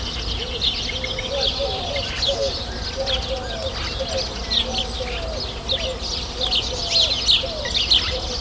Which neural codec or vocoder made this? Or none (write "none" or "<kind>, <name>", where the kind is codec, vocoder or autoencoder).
none